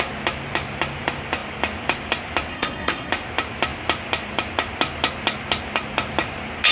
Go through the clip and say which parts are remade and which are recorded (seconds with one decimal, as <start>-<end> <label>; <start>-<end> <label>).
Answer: 0.0-2.5 recorded; 2.5-3.1 remade; 3.1-6.7 recorded